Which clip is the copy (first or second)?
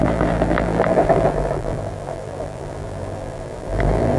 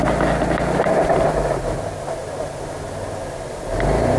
first